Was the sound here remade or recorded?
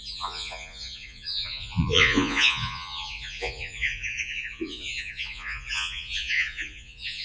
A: remade